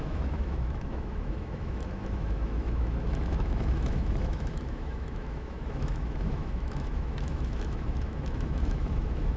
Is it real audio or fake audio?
fake